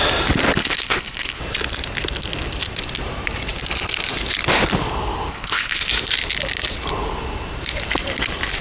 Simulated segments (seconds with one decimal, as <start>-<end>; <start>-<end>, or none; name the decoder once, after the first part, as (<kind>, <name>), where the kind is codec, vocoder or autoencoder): 0.6-1.4 (codec, HILCodec); 5.3-5.9